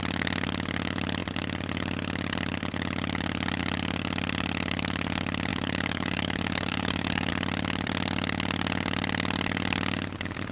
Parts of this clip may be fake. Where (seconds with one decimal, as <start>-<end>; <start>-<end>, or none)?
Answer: 5.5-7.3